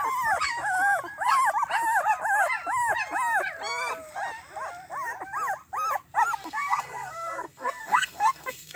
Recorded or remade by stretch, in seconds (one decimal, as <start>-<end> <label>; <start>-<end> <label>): 0.0-6.4 recorded; 6.4-8.8 remade